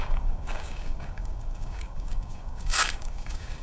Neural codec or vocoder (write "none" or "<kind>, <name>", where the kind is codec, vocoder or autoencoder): codec, DAC